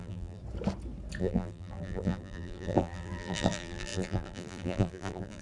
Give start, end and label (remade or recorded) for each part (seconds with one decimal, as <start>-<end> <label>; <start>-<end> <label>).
0.0-0.4 remade; 0.4-1.2 recorded; 1.2-5.4 remade